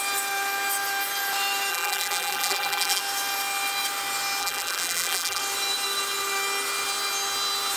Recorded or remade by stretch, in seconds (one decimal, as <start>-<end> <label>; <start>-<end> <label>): 0.0-1.7 recorded; 1.7-3.0 remade; 3.0-4.4 recorded; 4.4-5.4 remade; 5.4-7.8 recorded